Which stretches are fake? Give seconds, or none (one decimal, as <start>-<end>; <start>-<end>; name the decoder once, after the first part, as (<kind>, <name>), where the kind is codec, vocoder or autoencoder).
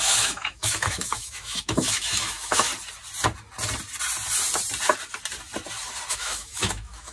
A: 0.0-2.7 (autoencoder, DAC-VAE); 6.1-7.1